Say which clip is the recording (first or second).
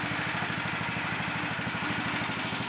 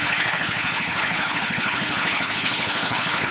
first